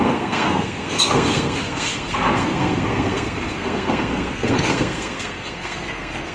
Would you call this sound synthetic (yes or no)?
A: yes